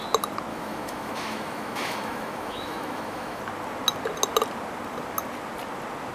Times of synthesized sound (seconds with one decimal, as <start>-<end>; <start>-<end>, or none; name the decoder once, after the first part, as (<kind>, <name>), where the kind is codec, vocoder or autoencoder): 0.5-3.4 (autoencoder, DAC-VAE)